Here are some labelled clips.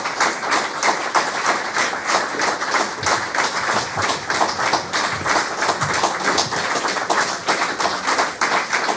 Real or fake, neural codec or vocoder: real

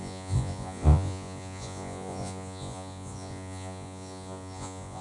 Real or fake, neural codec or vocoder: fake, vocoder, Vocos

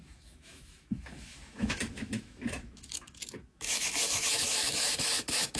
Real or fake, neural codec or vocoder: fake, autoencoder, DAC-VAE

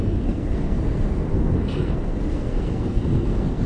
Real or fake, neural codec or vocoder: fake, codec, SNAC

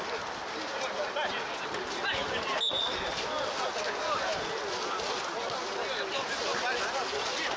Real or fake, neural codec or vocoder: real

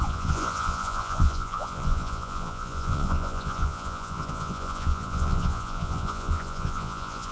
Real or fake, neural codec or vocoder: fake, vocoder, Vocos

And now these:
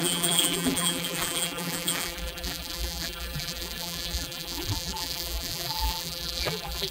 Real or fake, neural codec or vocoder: fake, vocoder, BigVGAN v2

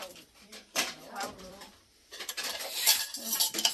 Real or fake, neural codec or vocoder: fake, vocoder, BigVGAN v2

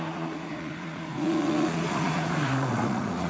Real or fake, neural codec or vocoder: fake, vocoder, Vocos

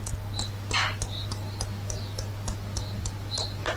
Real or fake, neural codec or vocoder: real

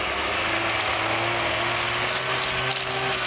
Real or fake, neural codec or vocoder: real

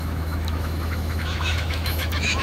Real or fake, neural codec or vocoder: fake, autoencoder, DAC-VAE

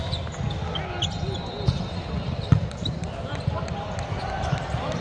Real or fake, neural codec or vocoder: real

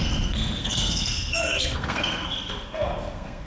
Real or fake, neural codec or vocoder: fake, codec, SNAC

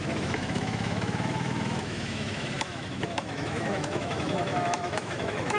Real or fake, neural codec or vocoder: fake, autoencoder, DAC-VAE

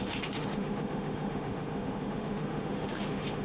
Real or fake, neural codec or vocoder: fake, autoencoder, DAC-VAE